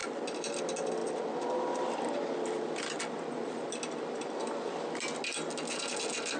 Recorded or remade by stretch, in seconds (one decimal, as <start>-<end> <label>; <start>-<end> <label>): 0.0-6.4 recorded

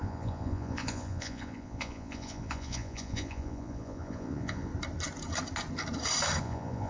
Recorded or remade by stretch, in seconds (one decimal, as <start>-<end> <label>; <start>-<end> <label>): 0.0-4.7 remade; 4.7-6.4 recorded; 6.4-6.9 remade

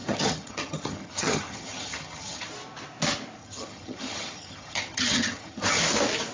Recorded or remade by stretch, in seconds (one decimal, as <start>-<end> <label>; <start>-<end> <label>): 0.0-2.5 remade; 2.5-3.4 recorded; 3.4-5.8 remade; 5.8-6.3 recorded

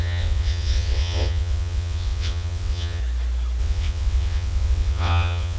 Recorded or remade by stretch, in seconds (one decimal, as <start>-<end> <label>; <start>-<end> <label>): 0.0-3.0 remade; 3.0-3.6 recorded; 3.6-5.6 remade

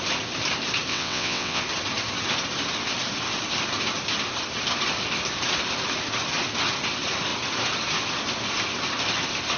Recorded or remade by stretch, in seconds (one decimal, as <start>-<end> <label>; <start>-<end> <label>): 0.0-0.9 recorded; 0.9-1.6 remade; 1.6-9.6 recorded

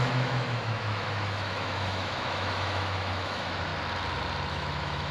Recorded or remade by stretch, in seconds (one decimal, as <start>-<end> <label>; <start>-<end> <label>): 0.0-3.7 remade; 3.7-4.5 recorded; 4.5-5.1 remade